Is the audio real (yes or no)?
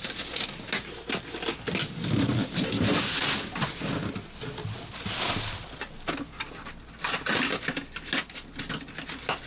yes